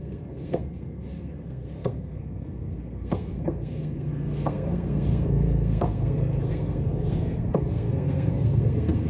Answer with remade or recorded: remade